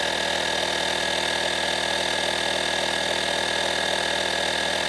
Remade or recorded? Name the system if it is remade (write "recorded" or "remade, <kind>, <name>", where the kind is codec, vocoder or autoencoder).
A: recorded